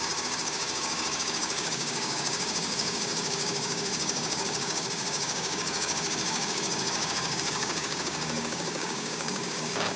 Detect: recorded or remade remade